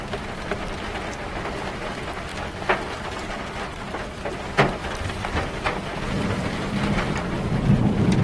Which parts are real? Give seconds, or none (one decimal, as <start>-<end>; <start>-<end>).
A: 0.0-4.8